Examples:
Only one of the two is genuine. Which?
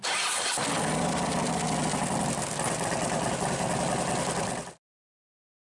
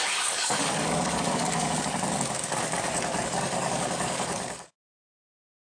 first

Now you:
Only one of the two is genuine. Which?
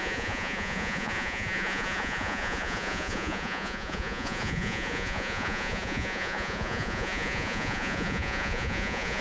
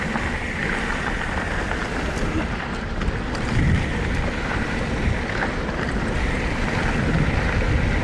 second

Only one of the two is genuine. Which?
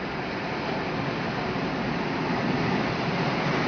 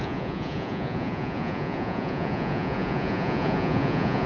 first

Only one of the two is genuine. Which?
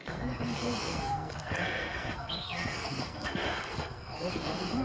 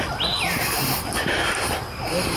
second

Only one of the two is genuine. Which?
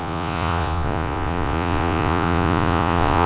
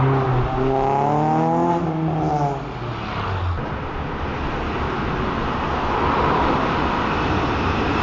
second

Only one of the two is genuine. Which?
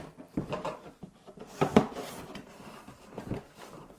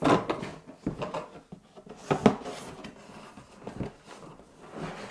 second